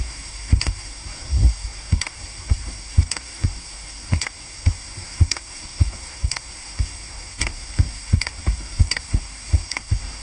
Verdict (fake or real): fake